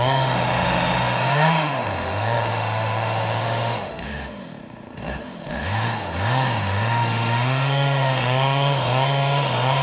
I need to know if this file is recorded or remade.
remade